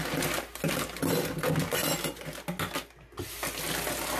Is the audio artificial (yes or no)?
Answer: no